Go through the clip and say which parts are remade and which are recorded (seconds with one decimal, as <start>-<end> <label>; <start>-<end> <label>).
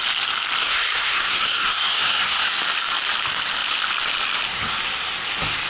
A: 0.0-0.6 recorded; 0.6-2.5 remade; 2.5-5.7 recorded